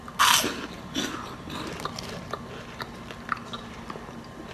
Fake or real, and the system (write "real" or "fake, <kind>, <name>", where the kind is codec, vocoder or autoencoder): real